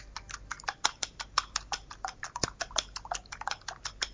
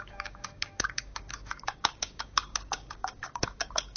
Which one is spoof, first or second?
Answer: second